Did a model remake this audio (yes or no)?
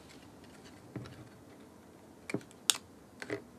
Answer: no